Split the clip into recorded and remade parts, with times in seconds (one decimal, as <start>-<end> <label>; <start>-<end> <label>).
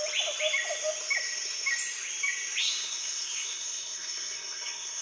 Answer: 0.0-2.6 recorded; 2.6-5.0 remade